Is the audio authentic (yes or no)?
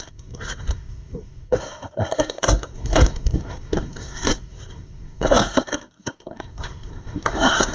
no